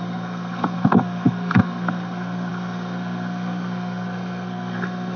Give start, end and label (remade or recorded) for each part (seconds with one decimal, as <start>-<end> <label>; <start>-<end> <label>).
0.0-5.2 remade